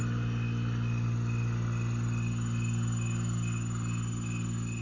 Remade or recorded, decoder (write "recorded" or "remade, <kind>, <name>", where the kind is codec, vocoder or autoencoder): recorded